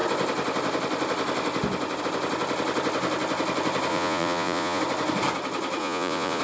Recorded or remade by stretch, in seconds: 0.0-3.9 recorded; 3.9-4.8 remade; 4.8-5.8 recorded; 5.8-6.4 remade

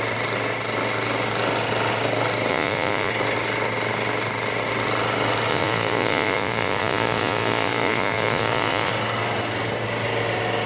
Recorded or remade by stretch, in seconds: 0.0-2.5 recorded; 2.5-3.1 remade; 3.1-5.5 recorded; 5.5-8.9 remade; 8.9-10.7 recorded

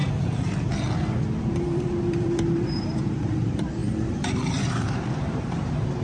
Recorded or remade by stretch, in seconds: 0.0-1.4 recorded; 1.4-6.0 remade

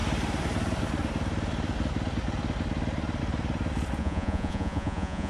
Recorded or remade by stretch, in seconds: 0.0-4.0 recorded; 4.0-5.3 remade